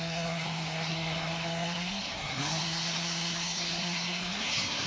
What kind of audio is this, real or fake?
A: fake